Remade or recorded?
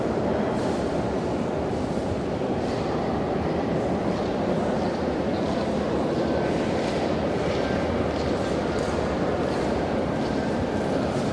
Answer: remade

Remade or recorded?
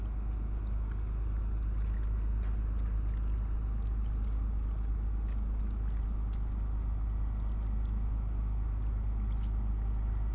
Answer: recorded